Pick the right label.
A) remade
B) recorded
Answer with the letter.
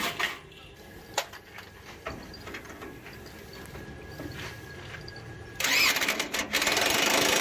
B